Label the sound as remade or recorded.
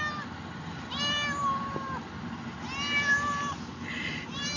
recorded